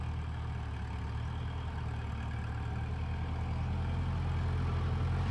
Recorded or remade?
recorded